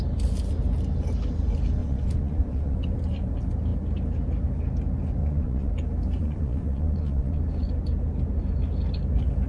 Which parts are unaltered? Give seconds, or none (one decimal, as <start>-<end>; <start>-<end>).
0.0-1.8; 2.8-5.2; 5.7-6.2; 7.4-9.5

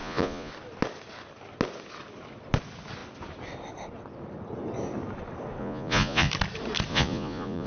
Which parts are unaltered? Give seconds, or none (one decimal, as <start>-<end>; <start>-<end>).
0.5-5.6; 6.3-6.9

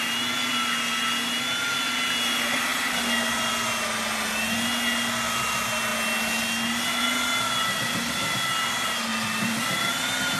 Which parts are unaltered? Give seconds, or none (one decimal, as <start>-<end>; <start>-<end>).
0.0-9.1; 9.9-10.4

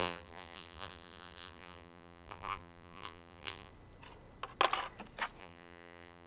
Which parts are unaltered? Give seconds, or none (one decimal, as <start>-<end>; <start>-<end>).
3.7-5.4

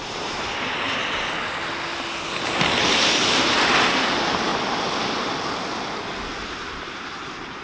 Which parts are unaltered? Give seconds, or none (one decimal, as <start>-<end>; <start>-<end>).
1.0-2.9; 4.5-6.3